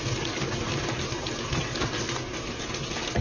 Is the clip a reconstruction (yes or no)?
no